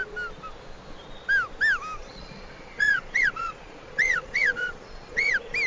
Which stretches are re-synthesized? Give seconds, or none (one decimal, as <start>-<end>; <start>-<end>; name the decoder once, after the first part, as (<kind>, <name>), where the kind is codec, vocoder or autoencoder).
2.0-5.3 (vocoder, Vocos)